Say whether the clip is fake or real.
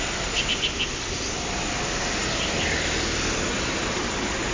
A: real